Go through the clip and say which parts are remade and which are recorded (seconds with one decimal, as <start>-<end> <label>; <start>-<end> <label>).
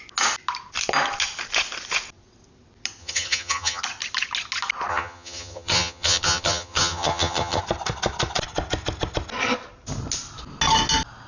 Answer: 0.0-3.0 recorded; 3.0-3.8 remade; 3.8-4.9 recorded; 4.9-7.6 remade; 7.6-11.3 recorded